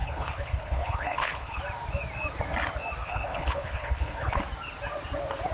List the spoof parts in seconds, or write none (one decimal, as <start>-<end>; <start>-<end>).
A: 0.0-1.6; 3.0-4.4